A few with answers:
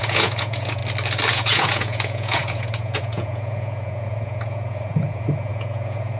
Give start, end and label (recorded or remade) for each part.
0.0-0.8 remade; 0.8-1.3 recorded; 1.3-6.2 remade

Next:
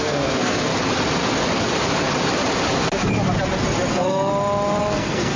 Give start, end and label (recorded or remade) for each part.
0.0-0.7 remade; 0.7-3.9 recorded; 3.9-4.3 remade; 4.3-4.8 recorded; 4.8-5.4 remade

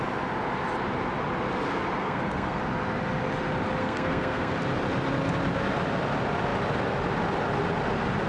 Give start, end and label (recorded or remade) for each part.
0.0-2.0 recorded; 2.0-2.6 remade; 2.6-3.8 recorded; 3.8-4.5 remade; 4.5-8.3 recorded

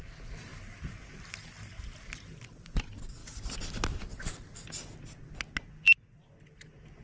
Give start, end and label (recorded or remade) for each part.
0.0-7.0 recorded

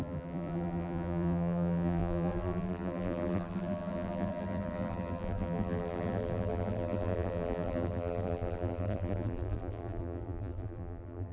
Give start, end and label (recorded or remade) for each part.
0.0-11.3 remade